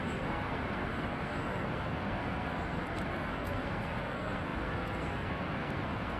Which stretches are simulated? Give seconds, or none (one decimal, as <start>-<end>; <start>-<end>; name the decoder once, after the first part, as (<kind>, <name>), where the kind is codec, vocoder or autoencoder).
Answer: 0.0-6.2 (codec, SNAC)